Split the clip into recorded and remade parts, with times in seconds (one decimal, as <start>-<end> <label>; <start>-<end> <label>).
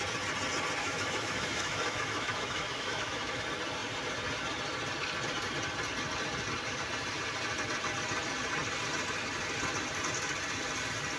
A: 0.0-0.8 recorded; 0.8-3.4 remade; 3.4-11.2 recorded